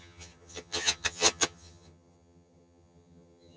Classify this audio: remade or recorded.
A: remade